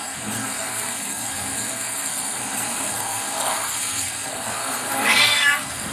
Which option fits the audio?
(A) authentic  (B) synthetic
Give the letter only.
B